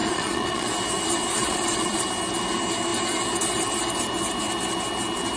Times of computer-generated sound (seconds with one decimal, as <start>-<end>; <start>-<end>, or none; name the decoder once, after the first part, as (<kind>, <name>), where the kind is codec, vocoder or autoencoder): 0.0-0.7 (vocoder, Vocos); 1.3-2.0

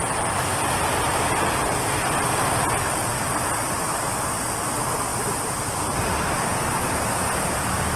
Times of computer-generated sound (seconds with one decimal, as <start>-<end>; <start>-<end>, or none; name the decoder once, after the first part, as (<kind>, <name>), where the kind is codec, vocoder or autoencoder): 1.6-3.4 (vocoder, BigVGAN v2); 5.1-6.1

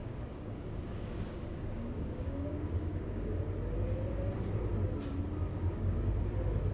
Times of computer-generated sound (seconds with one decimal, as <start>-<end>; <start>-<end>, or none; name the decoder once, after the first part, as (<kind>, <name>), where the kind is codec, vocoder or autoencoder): 0.0-3.4 (codec, DAC); 5.5-6.1

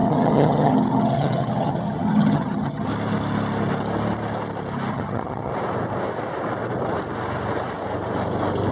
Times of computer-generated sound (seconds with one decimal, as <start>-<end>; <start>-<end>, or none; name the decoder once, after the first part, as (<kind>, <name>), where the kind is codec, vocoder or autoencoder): 0.0-2.9 (vocoder, HiFi-GAN); 4.9-5.5

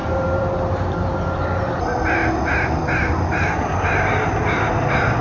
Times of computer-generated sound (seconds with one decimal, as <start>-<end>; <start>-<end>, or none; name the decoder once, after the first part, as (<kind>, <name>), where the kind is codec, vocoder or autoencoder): 0.0-2.2 (vocoder, BigVGAN v2); 4.7-5.2

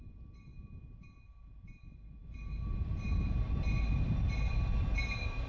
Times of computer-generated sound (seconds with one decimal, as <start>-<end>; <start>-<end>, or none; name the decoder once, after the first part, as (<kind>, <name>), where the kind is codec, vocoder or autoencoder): none

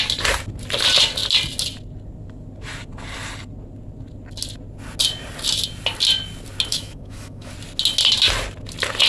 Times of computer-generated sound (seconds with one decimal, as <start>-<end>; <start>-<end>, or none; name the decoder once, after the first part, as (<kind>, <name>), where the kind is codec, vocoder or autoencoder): 6.7-7.5 (autoencoder, DAC-VAE)